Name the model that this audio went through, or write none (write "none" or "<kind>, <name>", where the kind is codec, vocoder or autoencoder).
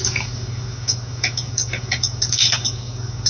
codec, DAC